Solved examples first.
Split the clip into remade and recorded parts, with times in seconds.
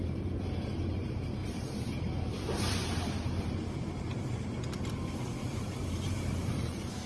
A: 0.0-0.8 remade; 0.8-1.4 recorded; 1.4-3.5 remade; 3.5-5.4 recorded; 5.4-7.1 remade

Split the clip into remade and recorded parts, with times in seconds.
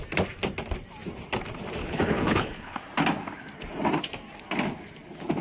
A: 0.0-1.8 recorded; 1.8-2.8 remade; 2.8-5.4 recorded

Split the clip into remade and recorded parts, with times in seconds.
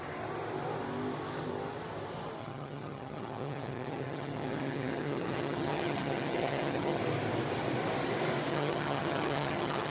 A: 0.0-2.4 recorded; 2.4-7.0 remade; 7.0-8.5 recorded; 8.5-9.9 remade